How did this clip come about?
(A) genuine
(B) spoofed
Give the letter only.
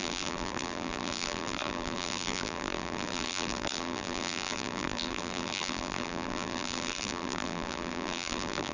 B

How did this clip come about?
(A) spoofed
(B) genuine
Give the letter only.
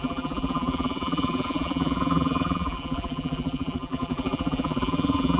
A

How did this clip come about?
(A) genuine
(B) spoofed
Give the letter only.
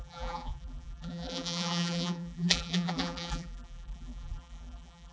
B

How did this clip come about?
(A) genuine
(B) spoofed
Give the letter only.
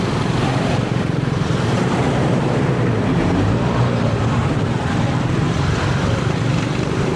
B